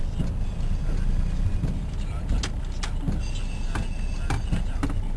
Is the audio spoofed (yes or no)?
no